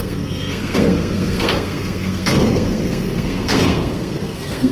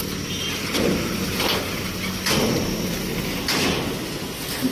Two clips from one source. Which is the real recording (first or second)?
second